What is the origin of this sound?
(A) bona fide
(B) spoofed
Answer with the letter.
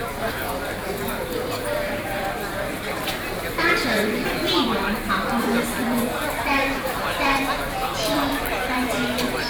B